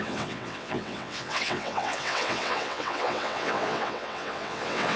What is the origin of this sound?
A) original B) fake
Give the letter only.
B